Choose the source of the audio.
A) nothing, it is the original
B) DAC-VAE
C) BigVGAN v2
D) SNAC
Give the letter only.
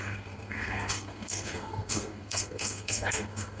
D